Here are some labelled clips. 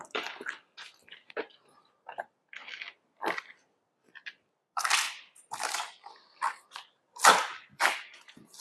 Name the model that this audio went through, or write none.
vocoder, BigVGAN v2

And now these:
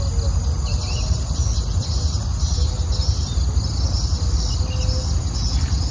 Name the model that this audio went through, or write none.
none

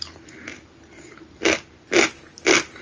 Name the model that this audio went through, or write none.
none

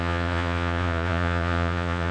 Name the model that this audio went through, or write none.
vocoder, Vocos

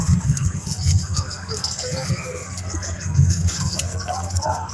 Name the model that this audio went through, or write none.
codec, SNAC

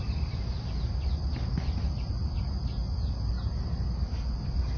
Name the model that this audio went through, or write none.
none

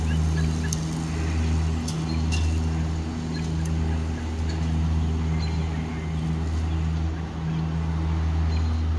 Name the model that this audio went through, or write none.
none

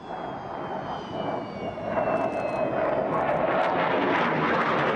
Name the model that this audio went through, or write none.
none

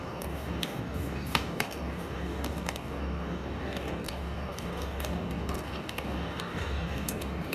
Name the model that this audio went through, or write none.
codec, DAC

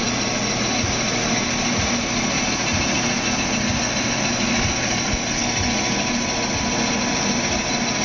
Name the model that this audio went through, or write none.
none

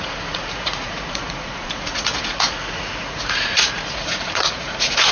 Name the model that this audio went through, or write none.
vocoder, Vocos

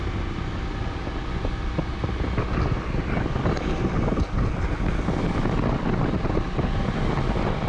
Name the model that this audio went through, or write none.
none